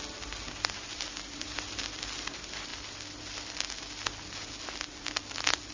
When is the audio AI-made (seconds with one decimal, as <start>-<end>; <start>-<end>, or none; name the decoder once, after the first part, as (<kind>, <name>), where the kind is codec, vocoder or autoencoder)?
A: none